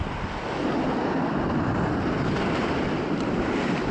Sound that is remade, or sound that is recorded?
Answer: recorded